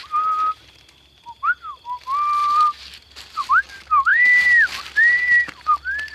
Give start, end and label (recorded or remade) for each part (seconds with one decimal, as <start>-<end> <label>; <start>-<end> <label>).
0.0-2.4 recorded; 2.4-3.5 remade; 3.5-6.1 recorded